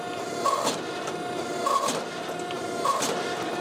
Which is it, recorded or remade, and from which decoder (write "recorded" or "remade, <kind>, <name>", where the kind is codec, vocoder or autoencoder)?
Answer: recorded